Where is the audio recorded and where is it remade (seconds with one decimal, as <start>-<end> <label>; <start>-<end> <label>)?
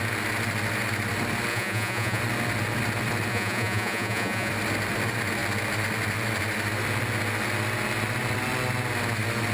0.0-1.5 recorded; 1.5-2.2 remade; 2.2-3.3 recorded; 3.3-4.5 remade; 4.5-9.5 recorded